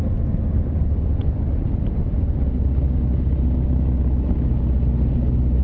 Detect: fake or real real